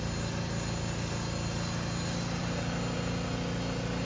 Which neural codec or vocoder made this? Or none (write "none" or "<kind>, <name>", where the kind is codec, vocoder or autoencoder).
none